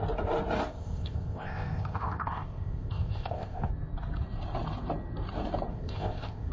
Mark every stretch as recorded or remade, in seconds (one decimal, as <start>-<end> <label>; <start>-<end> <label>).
0.0-0.7 recorded; 0.7-3.7 remade; 3.7-5.7 recorded; 5.7-6.5 remade